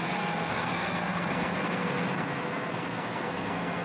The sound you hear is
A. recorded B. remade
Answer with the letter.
B